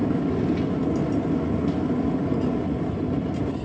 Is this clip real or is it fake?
real